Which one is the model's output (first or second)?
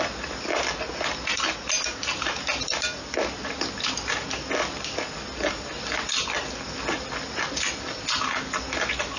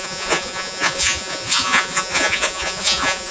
second